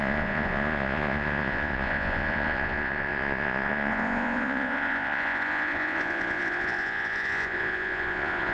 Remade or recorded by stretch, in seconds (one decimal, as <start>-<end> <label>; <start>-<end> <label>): 0.0-8.5 remade